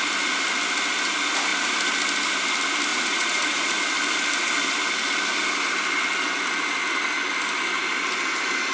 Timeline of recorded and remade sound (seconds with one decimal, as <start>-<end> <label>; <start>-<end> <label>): 0.0-2.9 recorded; 2.9-3.8 remade; 3.8-8.7 recorded